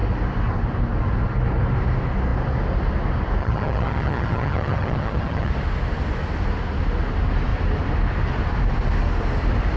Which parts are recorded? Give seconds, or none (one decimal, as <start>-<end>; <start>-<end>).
0.0-3.4; 5.5-9.8